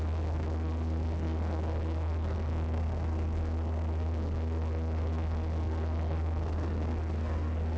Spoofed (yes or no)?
yes